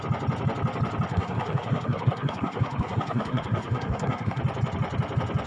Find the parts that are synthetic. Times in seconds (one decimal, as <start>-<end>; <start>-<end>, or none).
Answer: 1.1-4.4